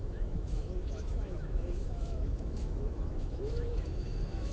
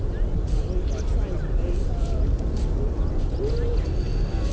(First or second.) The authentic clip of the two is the second